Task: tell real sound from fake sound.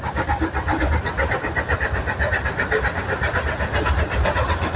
real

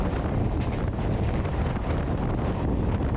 real